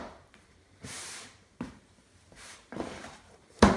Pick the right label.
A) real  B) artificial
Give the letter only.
B